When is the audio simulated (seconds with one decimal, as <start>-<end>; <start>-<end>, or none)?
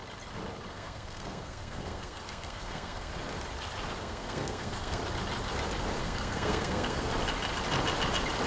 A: 0.7-3.1; 4.0-5.0; 6.0-7.1